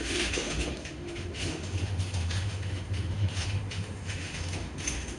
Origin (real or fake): fake